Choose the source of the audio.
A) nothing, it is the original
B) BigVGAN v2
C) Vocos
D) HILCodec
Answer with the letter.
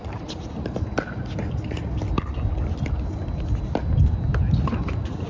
A